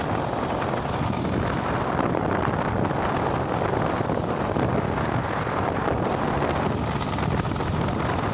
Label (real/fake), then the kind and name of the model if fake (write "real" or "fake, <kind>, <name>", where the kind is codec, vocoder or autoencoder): real